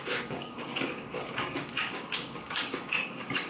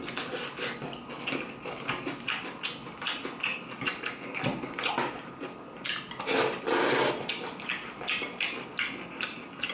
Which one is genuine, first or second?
second